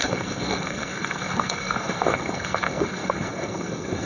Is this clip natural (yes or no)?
no